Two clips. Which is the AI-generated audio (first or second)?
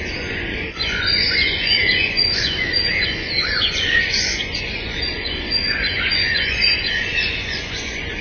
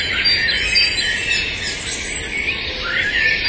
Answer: first